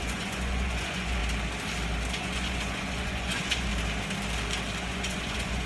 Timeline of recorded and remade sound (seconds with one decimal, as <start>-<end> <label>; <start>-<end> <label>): 0.0-1.2 remade; 1.2-2.1 recorded; 2.1-3.7 remade; 3.7-4.8 recorded; 4.8-5.7 remade